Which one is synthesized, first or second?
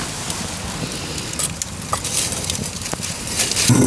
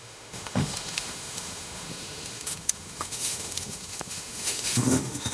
second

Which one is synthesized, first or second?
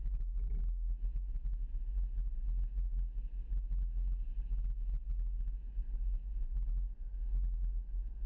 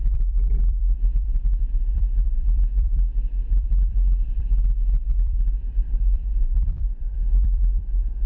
second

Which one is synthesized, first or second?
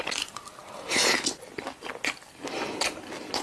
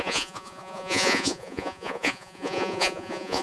second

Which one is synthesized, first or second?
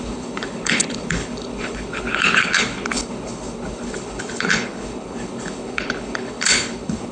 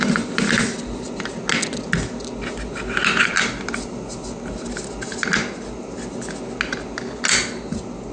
first